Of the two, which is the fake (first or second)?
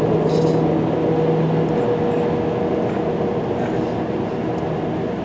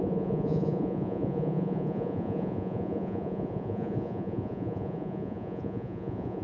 second